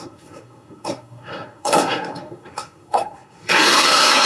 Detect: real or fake fake